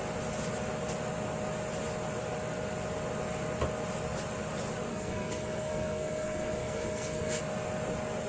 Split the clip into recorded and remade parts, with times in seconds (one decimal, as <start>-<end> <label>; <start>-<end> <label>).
0.0-4.9 recorded; 4.9-7.4 remade; 7.4-8.3 recorded

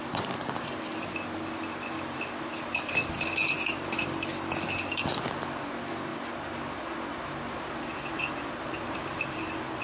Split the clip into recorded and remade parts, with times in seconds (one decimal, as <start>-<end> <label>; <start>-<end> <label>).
0.0-9.8 recorded

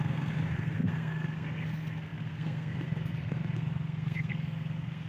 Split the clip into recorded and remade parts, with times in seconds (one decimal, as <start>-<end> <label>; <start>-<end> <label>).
0.0-5.1 remade

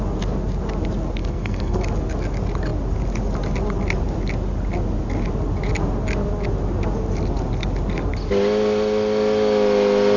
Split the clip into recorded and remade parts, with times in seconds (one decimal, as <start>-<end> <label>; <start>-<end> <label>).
0.0-1.2 recorded; 1.2-1.8 remade; 1.8-10.2 recorded